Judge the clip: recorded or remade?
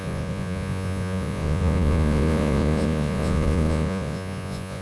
remade